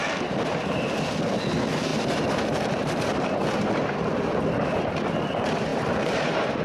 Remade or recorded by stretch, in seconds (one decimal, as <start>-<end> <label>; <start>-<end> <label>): 0.0-1.9 recorded; 1.9-4.4 remade; 4.4-5.7 recorded; 5.7-6.6 remade

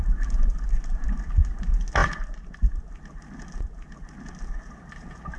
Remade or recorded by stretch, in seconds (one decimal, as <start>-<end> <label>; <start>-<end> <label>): 0.0-5.4 recorded

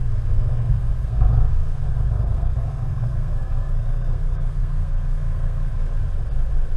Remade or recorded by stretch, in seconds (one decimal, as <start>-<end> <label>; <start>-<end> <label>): 0.0-5.7 remade; 5.7-6.8 recorded

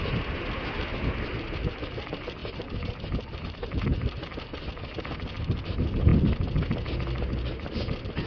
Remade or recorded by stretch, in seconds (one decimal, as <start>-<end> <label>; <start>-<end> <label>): 0.0-8.3 recorded

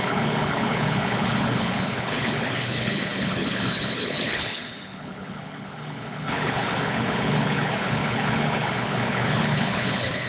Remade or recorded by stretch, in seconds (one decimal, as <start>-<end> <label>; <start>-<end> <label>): 0.0-10.3 remade

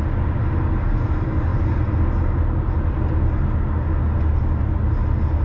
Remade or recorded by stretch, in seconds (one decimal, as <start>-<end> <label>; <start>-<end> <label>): 0.0-5.4 recorded

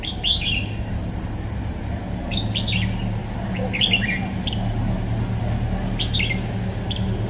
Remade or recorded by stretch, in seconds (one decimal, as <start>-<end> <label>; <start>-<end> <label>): 0.0-7.3 recorded